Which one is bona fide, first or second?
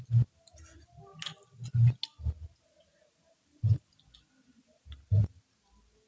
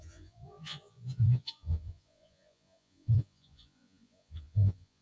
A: first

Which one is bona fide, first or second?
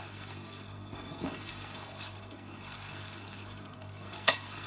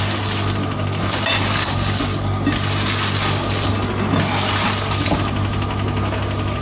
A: second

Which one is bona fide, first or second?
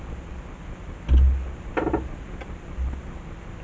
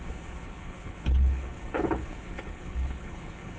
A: first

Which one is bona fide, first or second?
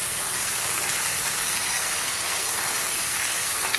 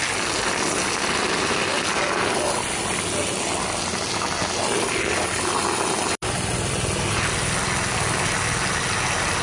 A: second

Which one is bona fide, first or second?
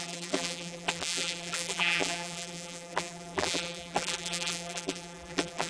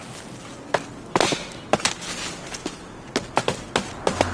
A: second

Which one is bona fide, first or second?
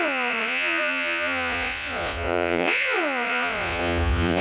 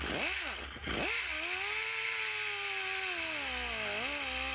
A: second